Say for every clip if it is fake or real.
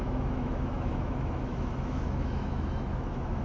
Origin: fake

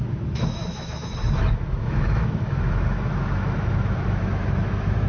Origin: fake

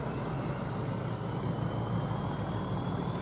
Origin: real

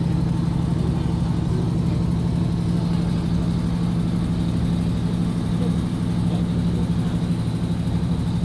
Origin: real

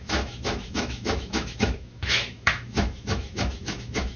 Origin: fake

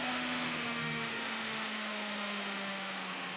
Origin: fake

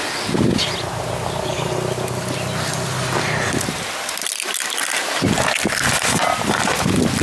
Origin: real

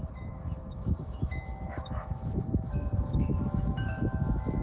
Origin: fake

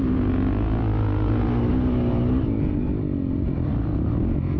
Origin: real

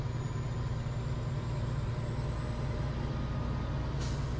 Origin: real